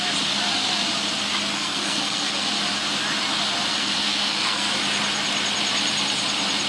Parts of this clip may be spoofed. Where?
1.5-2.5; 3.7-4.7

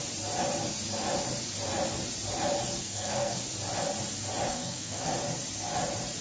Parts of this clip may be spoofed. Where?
2.8-3.4; 4.5-5.1

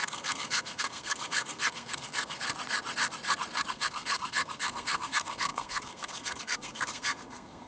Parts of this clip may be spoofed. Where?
0.0-2.4; 3.7-7.7

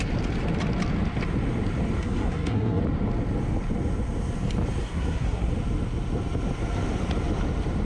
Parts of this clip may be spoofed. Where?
2.0-2.8; 4.8-5.5

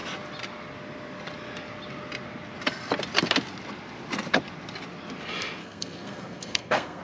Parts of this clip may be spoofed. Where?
5.6-7.0